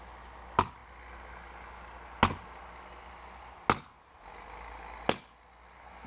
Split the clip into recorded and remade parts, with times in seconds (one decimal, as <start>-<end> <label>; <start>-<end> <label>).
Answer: 0.0-6.1 recorded